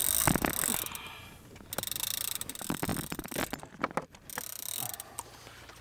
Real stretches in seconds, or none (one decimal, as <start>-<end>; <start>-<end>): 0.0-5.8